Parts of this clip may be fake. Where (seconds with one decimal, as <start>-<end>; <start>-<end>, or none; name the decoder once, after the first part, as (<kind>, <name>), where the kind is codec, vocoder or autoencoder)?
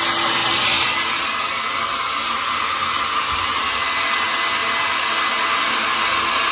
none